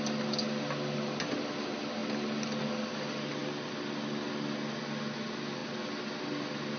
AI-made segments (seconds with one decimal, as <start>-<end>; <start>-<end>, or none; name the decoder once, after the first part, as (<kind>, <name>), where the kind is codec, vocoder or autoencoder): none